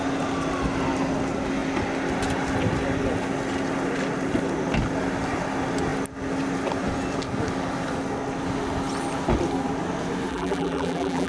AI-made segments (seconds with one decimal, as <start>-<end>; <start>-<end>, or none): 10.3-11.3

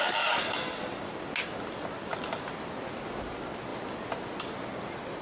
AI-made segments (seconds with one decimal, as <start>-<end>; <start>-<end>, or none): none

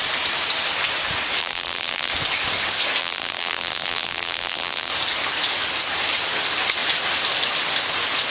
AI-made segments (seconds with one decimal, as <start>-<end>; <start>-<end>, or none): 1.4-2.1; 3.0-4.9

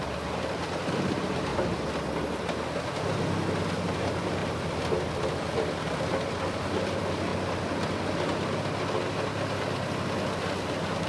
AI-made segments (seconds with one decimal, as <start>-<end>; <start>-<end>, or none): 0.0-1.5; 4.0-4.4; 5.0-7.3